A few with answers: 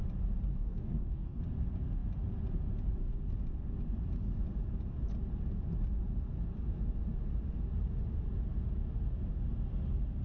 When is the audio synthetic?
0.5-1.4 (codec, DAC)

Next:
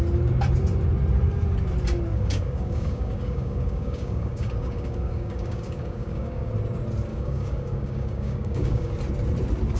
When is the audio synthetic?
2.1-6.5 (codec, DAC); 7.1-8.9

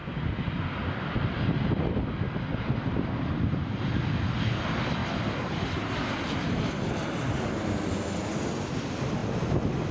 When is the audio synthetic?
none

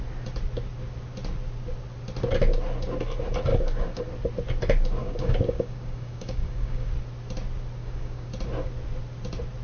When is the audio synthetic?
3.5-4.0 (codec, DAC); 5.0-6.9; 7.8-8.3